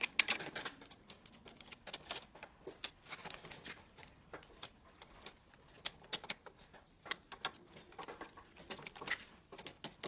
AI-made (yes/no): no